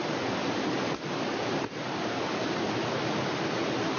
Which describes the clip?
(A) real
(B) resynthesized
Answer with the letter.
A